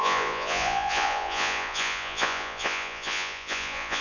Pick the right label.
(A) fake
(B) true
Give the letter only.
A